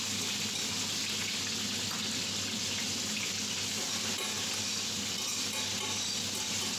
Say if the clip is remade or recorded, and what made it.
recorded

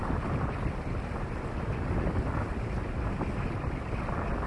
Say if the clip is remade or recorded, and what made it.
recorded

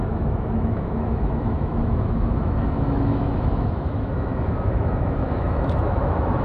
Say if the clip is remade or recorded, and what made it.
remade, autoencoder, DAC-VAE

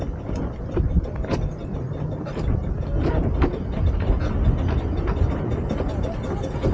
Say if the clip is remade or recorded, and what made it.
recorded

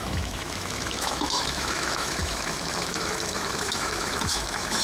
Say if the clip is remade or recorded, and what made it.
remade, autoencoder, DAC-VAE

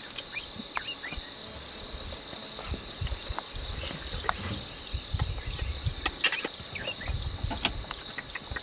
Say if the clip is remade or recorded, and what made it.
recorded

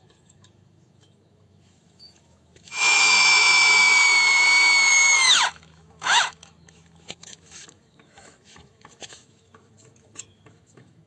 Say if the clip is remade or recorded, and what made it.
remade, autoencoder, DAC-VAE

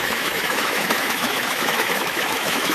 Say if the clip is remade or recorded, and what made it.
remade, autoencoder, DAC-VAE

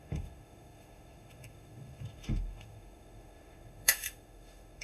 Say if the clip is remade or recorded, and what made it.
remade, autoencoder, DAC-VAE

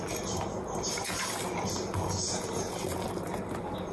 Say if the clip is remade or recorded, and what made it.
recorded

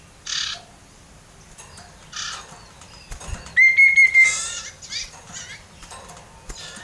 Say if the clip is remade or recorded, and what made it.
recorded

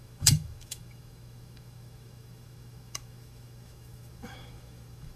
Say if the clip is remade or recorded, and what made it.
remade, autoencoder, DAC-VAE